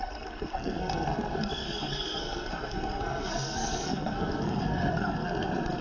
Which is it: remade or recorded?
remade